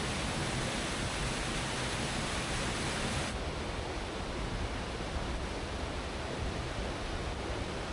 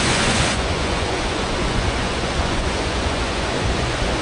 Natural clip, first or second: first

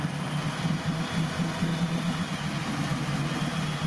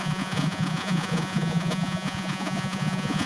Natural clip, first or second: first